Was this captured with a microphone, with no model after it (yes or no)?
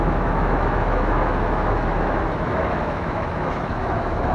no